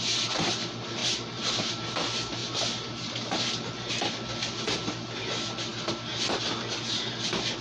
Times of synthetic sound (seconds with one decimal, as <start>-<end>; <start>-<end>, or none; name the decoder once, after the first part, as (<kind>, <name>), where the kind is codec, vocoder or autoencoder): 1.0-1.8 (vocoder, BigVGAN v2); 2.4-3.9